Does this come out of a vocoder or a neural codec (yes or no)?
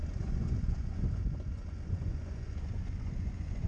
yes